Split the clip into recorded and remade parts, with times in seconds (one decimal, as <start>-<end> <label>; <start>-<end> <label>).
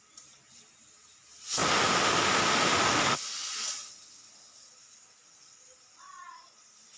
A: 0.0-7.0 recorded